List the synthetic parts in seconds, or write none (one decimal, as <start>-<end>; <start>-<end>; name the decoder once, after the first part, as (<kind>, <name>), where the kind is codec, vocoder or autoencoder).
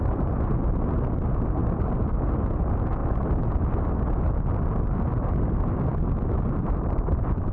3.0-3.6 (vocoder, BigVGAN v2)